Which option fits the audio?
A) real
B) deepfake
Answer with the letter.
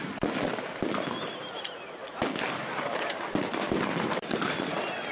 A